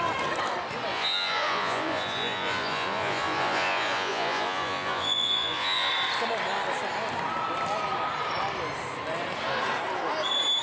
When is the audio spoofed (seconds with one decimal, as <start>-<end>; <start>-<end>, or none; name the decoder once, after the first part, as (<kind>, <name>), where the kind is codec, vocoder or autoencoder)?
0.9-5.9 (vocoder, Vocos)